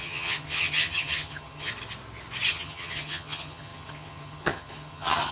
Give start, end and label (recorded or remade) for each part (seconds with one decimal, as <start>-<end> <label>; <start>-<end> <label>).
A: 0.0-1.7 remade; 1.7-2.5 recorded; 2.5-5.3 remade